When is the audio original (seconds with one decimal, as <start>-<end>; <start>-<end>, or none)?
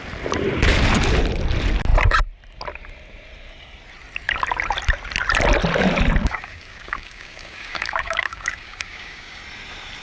0.0-6.2; 9.4-10.0